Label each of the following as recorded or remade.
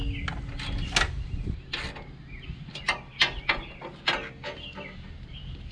recorded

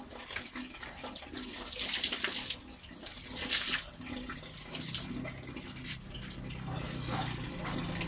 recorded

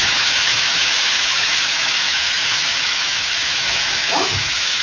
remade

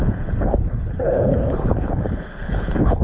remade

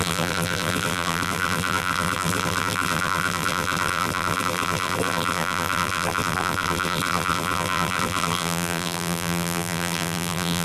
remade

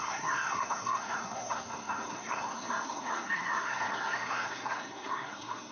remade